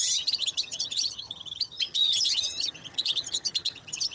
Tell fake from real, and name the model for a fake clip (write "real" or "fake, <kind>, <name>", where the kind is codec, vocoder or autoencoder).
fake, vocoder, HiFi-GAN